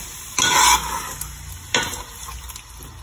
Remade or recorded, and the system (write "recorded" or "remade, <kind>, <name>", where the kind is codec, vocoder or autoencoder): recorded